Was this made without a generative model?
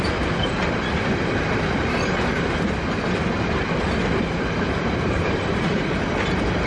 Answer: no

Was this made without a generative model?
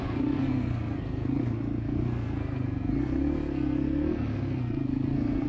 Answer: no